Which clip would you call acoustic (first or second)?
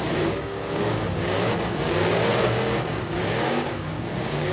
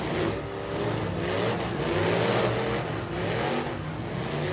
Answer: second